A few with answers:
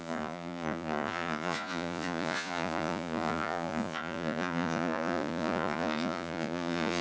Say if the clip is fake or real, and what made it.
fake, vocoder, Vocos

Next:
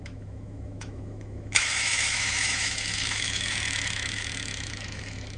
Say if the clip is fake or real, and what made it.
fake, autoencoder, DAC-VAE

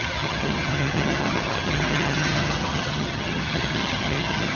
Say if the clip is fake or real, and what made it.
fake, vocoder, HiFi-GAN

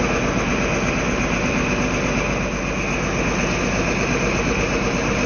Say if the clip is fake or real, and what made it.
real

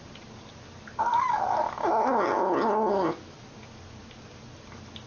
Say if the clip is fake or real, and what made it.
real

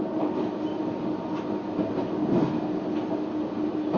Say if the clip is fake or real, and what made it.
real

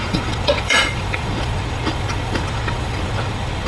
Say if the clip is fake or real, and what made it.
fake, vocoder, Vocos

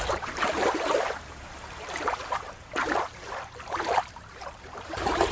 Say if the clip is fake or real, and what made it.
fake, vocoder, BigVGAN v2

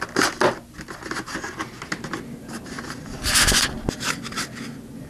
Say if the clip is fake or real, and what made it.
real